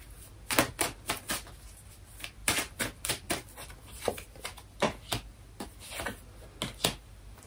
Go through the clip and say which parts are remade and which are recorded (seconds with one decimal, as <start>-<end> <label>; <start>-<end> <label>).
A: 0.0-2.4 recorded; 2.4-5.6 remade; 5.6-7.5 recorded